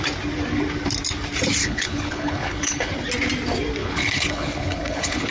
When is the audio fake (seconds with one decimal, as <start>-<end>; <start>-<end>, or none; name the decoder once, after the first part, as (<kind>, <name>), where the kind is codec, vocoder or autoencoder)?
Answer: 1.6-2.9 (codec, HILCodec); 3.8-5.3